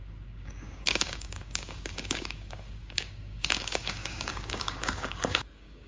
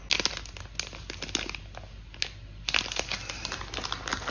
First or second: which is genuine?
second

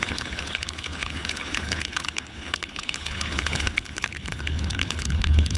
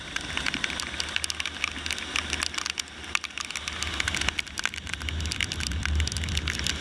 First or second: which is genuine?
second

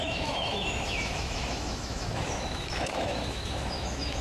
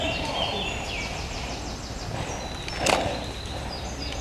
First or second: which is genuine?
second